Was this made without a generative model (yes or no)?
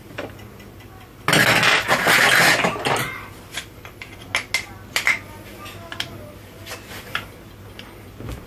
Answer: yes